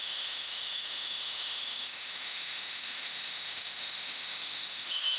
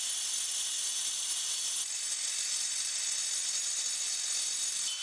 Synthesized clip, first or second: first